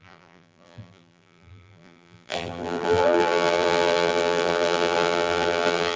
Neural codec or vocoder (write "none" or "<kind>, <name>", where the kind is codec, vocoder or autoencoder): vocoder, BigVGAN v2